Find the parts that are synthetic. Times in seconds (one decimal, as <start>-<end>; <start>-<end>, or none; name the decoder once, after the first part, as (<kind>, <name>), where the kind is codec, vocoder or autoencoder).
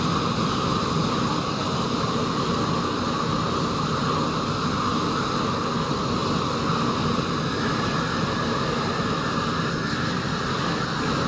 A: none